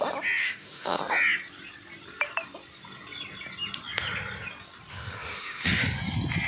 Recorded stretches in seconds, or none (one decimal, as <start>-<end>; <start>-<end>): 0.0-0.4; 1.0-4.9; 5.8-6.5